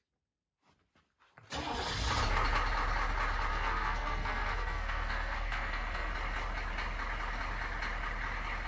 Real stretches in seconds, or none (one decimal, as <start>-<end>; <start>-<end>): 0.0-3.5; 6.1-8.7